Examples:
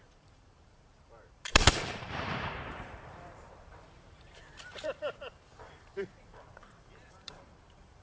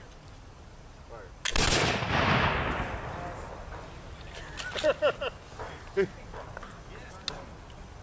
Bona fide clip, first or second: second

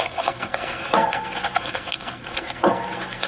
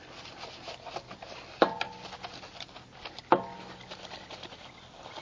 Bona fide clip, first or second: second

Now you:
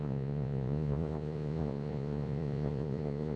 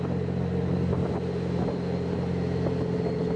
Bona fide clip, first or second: second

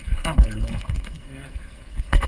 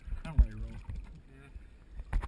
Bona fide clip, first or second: second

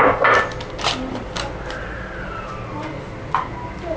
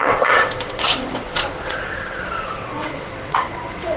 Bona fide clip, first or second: first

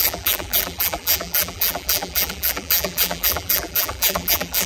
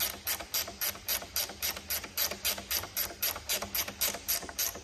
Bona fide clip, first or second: second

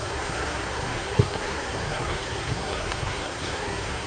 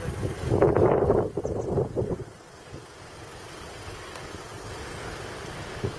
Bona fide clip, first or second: second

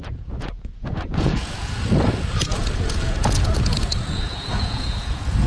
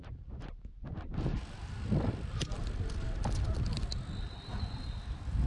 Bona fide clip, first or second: second